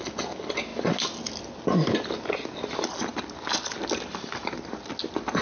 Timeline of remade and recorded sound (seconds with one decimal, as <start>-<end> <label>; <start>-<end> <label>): 0.0-5.4 recorded